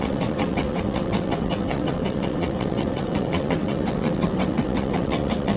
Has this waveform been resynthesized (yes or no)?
yes